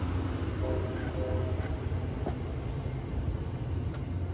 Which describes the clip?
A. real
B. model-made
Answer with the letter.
A